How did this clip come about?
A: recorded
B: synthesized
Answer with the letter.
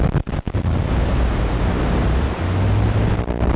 A